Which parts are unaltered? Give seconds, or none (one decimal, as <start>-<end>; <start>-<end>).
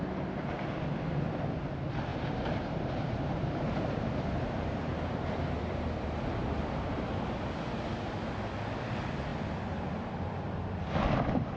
0.0-2.1; 7.3-11.6